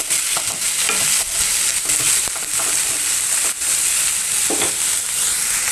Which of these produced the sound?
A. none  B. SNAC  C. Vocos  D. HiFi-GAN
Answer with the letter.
A